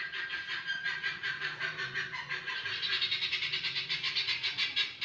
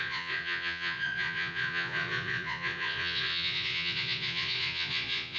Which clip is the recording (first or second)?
first